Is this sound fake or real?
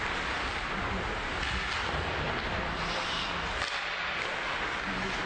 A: real